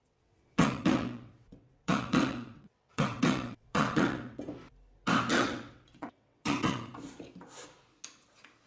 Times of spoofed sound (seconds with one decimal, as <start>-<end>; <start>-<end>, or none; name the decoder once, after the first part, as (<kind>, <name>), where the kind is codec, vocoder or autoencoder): 0.0-4.4 (vocoder, WaveNeXt); 5.3-6.9